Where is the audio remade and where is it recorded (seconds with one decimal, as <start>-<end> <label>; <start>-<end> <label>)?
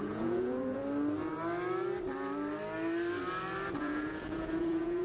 0.0-0.8 remade; 0.8-3.8 recorded; 3.8-5.0 remade